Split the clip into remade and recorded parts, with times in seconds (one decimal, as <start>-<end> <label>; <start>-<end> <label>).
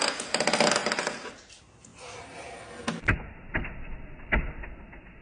0.0-5.2 recorded